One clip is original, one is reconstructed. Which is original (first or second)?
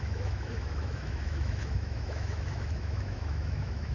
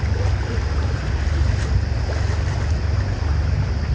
second